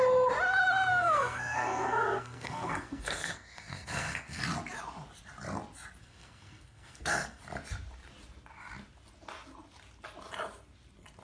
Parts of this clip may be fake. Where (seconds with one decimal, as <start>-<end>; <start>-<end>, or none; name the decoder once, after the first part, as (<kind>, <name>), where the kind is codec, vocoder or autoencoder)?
0.9-4.4 (codec, SNAC); 6.0-7.4